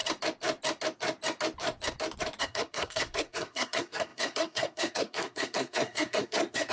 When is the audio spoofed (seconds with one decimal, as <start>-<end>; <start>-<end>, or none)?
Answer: 2.4-6.7

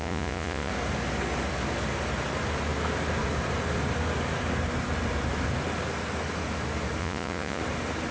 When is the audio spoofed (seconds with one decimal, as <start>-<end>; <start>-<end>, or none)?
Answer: 0.0-0.7; 7.0-7.6

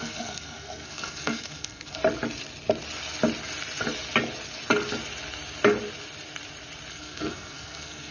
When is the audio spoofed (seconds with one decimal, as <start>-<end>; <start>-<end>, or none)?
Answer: 0.0-2.0; 6.9-8.1